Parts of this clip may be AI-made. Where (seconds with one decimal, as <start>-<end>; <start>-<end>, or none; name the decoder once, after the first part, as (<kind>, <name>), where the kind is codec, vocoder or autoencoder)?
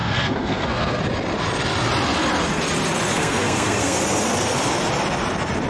0.0-1.0 (codec, SNAC); 3.1-4.0